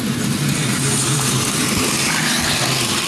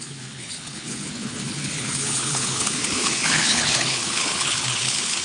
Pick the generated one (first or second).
second